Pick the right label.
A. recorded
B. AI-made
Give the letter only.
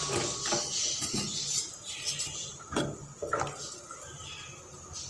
A